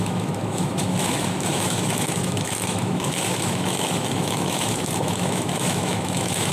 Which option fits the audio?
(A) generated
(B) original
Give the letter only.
A